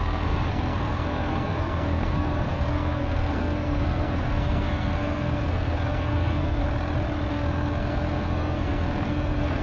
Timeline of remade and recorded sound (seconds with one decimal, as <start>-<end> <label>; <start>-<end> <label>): 0.0-6.6 remade; 6.6-7.3 recorded; 7.3-9.6 remade